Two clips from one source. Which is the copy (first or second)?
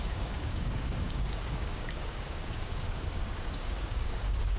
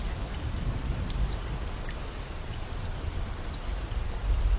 first